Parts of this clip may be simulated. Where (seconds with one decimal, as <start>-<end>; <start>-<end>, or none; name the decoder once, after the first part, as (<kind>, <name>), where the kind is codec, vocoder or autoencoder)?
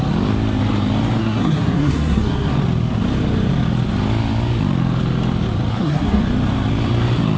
1.2-2.5 (codec, SNAC); 5.7-6.2